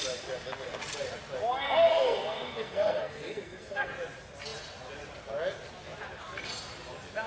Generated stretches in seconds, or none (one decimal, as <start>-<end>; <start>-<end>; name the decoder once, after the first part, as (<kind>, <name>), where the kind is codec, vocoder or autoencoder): 1.5-3.9 (codec, SNAC)